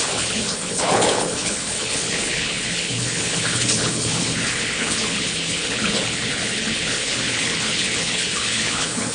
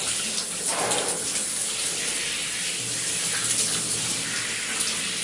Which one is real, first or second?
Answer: second